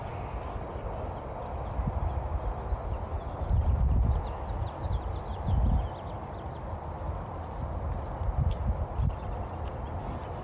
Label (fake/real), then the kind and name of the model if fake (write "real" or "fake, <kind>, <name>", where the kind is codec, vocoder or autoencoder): real